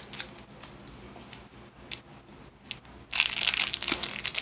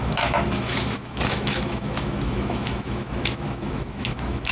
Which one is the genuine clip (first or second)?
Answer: first